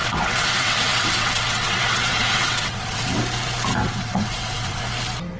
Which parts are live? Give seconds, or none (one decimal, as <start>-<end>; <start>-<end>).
3.2-3.8; 4.8-5.4